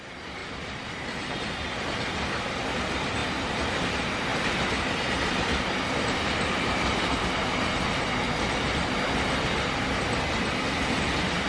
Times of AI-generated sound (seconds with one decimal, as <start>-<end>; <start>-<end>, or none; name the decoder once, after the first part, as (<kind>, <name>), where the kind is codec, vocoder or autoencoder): 0.4-1.4 (vocoder, BigVGAN v2); 3.2-3.7; 4.3-8.1